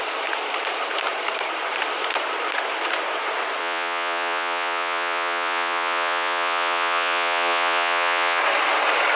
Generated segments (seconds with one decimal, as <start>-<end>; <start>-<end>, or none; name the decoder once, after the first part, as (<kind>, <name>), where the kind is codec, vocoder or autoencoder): 3.6-8.4 (vocoder, Vocos)